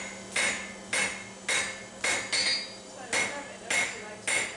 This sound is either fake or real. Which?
real